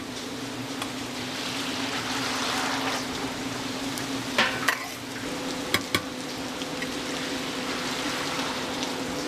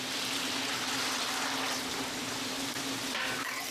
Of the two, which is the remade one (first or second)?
second